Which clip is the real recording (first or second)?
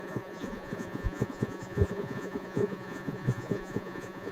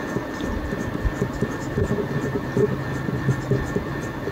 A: second